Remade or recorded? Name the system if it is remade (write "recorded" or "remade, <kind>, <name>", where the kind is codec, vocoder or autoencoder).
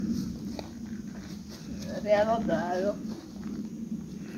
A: recorded